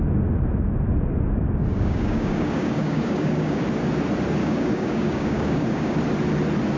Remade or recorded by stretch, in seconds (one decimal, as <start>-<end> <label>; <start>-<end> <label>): 0.0-1.7 recorded; 1.7-3.6 remade; 3.6-4.4 recorded; 4.4-6.0 remade; 6.0-6.8 recorded